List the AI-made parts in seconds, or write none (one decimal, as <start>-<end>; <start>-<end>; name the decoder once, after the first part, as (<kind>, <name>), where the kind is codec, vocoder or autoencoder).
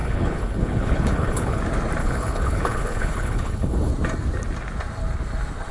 0.0-1.6 (codec, HILCodec); 2.0-3.9